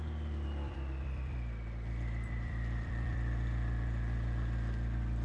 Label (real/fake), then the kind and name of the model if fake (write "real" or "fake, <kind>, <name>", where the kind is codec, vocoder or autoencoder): fake, vocoder, BigVGAN v2